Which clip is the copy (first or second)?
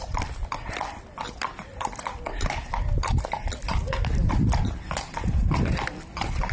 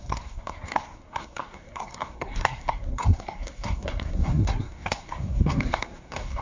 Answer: second